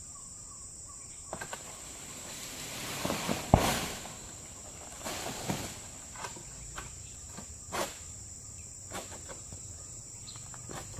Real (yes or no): no